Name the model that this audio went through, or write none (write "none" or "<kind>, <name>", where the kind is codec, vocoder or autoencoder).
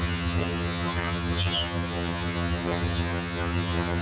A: vocoder, HiFi-GAN